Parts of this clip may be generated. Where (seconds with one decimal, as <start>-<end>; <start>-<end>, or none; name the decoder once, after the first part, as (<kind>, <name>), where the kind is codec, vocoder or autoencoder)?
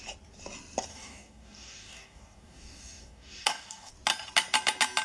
0.9-3.9 (codec, DAC)